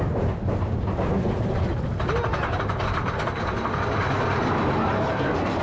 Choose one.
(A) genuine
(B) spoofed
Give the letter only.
A